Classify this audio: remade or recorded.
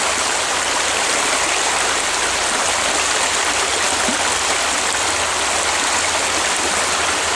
recorded